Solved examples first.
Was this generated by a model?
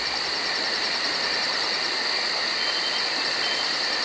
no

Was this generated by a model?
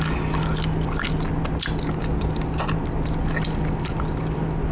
no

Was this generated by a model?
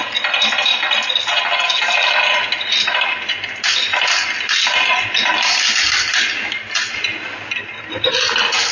no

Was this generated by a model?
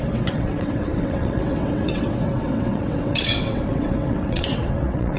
yes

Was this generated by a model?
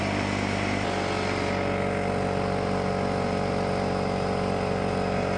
no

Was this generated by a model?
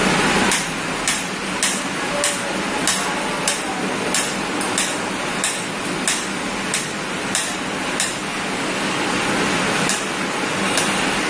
no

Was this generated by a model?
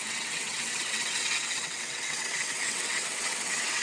yes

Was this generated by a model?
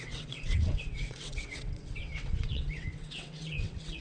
yes